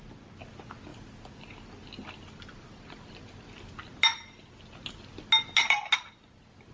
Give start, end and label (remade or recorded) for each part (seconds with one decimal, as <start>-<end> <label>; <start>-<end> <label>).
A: 0.0-6.7 recorded